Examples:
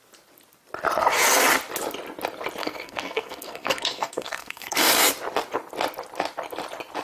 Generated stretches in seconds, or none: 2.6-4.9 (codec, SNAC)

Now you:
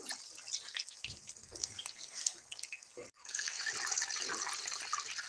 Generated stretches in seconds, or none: 0.7-3.6 (codec, SNAC)

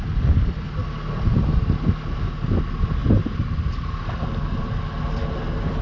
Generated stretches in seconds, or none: none

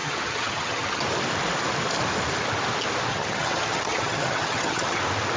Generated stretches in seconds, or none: 0.0-1.0 (vocoder, HiFi-GAN); 3.1-5.0

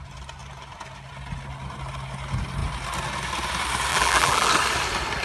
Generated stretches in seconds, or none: 3.9-4.5 (vocoder, BigVGAN v2)